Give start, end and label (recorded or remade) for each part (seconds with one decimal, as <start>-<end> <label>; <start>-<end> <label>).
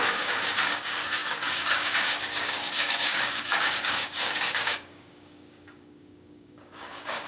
0.0-7.3 remade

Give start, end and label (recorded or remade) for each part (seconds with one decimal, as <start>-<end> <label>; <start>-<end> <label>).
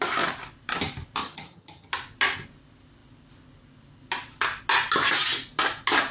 0.0-1.2 recorded; 1.2-1.9 remade; 1.9-6.1 recorded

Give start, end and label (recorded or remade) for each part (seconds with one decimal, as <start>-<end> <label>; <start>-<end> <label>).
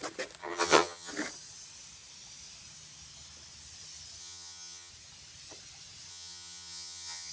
0.0-0.4 recorded; 0.4-1.1 remade; 1.1-4.2 recorded; 4.2-4.9 remade; 4.9-6.1 recorded; 6.1-7.3 remade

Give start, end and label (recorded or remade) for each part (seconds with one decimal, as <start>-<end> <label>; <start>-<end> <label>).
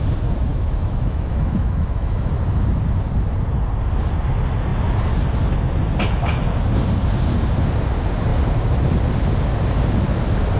0.0-0.5 recorded; 0.5-2.3 remade; 2.3-10.6 recorded